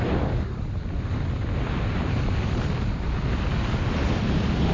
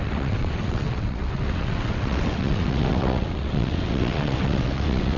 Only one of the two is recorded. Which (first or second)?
first